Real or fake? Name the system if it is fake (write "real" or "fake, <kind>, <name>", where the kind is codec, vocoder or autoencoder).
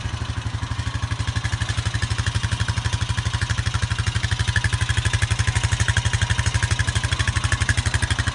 real